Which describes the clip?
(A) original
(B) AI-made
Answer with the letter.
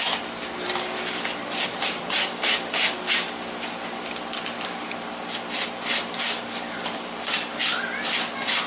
A